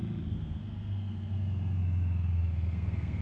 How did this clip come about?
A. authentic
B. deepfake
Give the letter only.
B